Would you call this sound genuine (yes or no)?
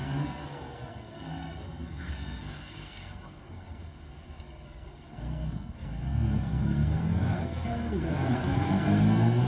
no